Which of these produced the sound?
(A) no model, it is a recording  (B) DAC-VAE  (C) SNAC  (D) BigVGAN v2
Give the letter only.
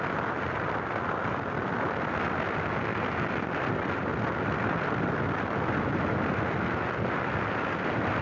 A